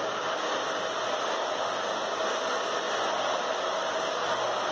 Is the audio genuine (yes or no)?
yes